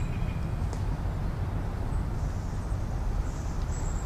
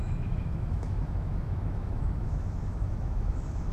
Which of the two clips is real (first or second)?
first